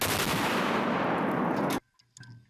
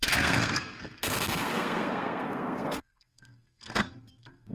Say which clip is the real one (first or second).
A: first